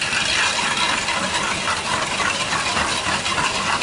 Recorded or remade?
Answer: recorded